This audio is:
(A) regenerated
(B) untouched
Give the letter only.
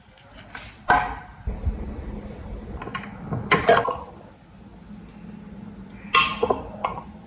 B